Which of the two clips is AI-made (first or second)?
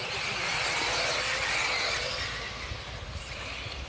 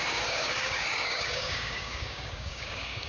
second